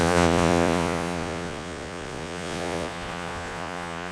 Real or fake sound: fake